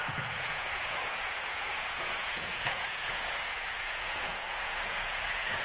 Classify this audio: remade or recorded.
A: remade